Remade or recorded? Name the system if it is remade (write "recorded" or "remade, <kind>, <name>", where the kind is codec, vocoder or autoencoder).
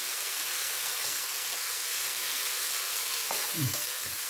remade, codec, SNAC